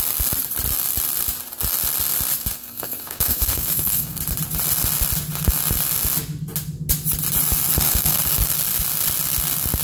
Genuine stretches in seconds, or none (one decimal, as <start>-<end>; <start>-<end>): 0.0-2.4; 4.2-7.7; 8.6-9.8

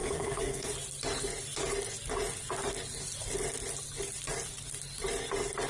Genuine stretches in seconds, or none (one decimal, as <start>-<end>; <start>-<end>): 0.7-5.7

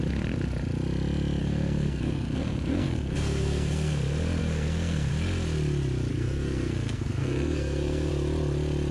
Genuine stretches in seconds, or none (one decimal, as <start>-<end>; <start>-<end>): 0.0-1.4; 4.0-4.4; 5.1-6.1; 8.1-8.9

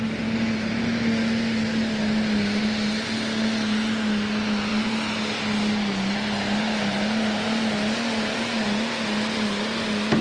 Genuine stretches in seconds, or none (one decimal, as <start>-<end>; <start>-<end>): 0.0-10.2

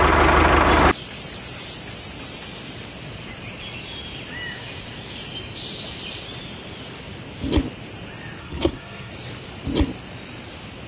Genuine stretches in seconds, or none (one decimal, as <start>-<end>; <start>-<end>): 0.0-8.4; 9.1-10.9

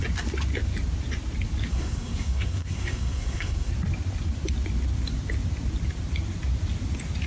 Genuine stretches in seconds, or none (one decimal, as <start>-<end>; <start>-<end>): 0.0-1.7; 3.7-7.3

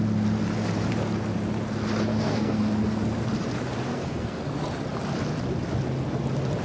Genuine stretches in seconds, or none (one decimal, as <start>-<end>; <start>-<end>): 0.0-2.1; 2.6-3.9; 4.4-6.6

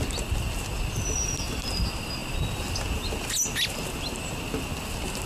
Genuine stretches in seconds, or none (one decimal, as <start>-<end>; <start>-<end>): 0.0-5.3